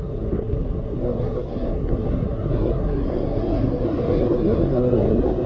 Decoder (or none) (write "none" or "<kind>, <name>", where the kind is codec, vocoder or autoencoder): codec, SNAC